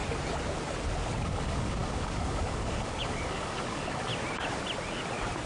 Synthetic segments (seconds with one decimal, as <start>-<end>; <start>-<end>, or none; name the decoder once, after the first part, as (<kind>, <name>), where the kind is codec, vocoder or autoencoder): 1.3-4.1 (codec, DAC)